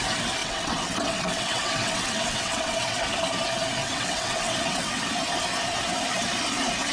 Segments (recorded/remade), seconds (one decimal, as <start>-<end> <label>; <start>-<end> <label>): 0.0-0.4 recorded; 0.4-3.0 remade; 3.0-3.8 recorded; 3.8-5.0 remade; 5.0-6.9 recorded